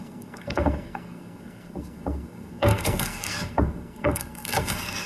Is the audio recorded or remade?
remade